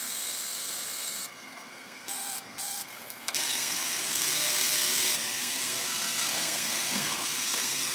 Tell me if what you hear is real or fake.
fake